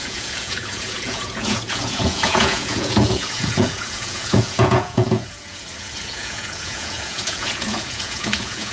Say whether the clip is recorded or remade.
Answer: remade